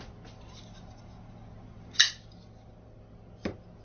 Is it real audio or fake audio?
real